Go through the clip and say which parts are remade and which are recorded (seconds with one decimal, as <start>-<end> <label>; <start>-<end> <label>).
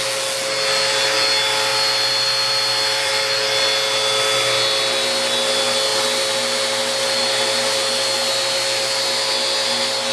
0.0-1.7 recorded; 1.7-3.1 remade; 3.1-10.1 recorded